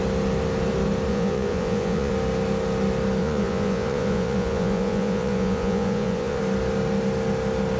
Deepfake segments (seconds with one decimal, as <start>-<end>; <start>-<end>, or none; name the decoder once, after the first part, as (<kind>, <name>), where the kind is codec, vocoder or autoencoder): 1.1-2.1 (vocoder, Vocos); 3.2-6.4